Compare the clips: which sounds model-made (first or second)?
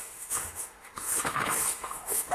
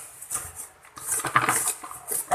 first